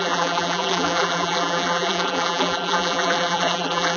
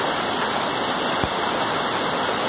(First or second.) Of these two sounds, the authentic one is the second